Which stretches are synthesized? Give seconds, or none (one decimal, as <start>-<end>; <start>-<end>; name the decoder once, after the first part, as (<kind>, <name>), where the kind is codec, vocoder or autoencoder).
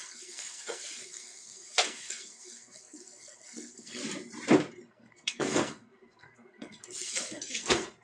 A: 0.0-4.0 (codec, SNAC); 4.9-8.0